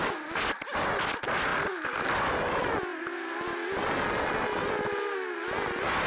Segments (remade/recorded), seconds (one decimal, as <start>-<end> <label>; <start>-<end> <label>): 0.0-6.1 recorded